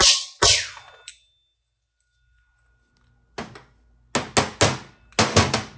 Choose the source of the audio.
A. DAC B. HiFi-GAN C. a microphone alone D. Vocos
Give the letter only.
C